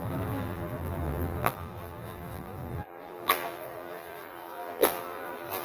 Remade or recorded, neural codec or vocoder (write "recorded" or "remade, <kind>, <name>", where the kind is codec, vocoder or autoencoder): remade, vocoder, BigVGAN v2